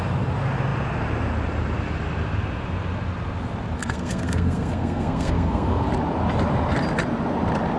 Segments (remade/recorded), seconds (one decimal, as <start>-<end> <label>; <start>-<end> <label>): 0.0-3.8 recorded; 3.8-5.9 remade; 5.9-7.8 recorded